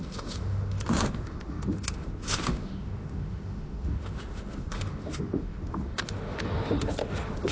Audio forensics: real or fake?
fake